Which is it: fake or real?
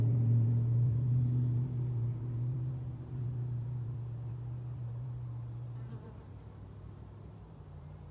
fake